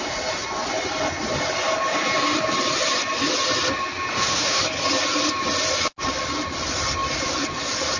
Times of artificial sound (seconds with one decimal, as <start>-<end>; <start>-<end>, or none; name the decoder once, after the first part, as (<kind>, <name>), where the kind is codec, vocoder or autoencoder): 4.1-4.6 (autoencoder, DAC-VAE)